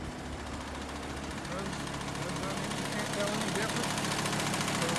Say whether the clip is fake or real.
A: real